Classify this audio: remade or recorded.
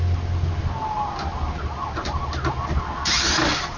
recorded